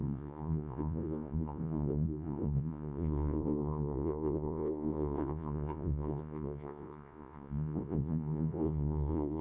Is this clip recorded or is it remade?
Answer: remade